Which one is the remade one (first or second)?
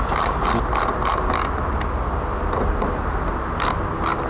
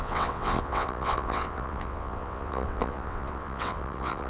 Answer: second